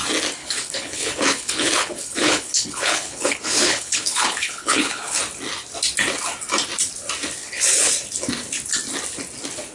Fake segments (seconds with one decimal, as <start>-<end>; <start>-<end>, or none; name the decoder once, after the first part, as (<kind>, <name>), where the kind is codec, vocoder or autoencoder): 0.4-5.2 (codec, HILCodec); 7.4-7.9